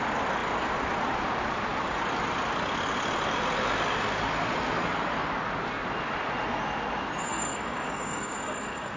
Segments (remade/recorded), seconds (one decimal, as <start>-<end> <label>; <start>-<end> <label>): 0.0-7.3 recorded; 7.3-9.0 remade